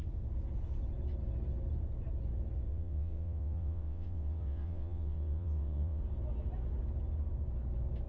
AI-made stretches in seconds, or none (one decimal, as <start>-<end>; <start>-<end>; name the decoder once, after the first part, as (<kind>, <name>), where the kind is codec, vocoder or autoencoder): 2.7-6.0 (vocoder, WaveNeXt)